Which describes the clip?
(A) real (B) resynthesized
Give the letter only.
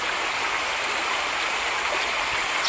A